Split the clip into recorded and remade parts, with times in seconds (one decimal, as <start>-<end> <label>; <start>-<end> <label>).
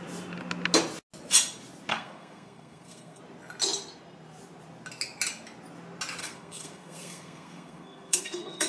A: 0.0-1.9 recorded; 1.9-3.2 remade; 3.2-6.2 recorded; 6.2-8.7 remade